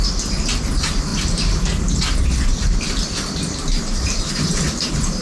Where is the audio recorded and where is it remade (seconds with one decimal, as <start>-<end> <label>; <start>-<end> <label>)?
0.0-5.2 recorded